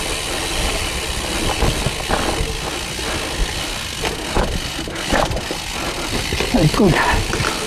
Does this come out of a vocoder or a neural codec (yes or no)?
no